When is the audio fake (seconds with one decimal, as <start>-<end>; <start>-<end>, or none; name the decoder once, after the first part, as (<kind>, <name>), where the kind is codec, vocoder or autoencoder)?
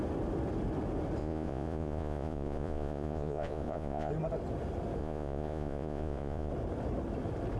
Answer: 1.2-4.1 (vocoder, Vocos); 5.0-6.5